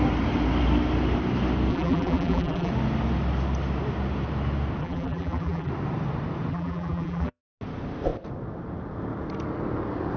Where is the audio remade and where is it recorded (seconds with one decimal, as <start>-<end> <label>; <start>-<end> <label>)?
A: 0.0-1.7 recorded; 1.7-2.7 remade; 2.7-4.8 recorded; 4.8-5.7 remade; 5.7-6.5 recorded; 6.5-7.4 remade; 7.4-10.2 recorded